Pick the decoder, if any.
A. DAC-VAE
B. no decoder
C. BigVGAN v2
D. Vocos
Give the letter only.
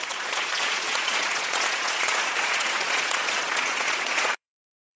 D